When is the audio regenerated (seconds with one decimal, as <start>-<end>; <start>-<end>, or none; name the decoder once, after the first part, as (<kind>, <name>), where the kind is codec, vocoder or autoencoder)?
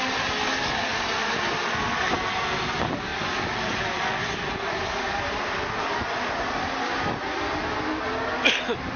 none